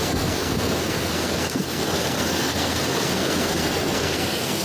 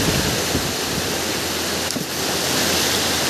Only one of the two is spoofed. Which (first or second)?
first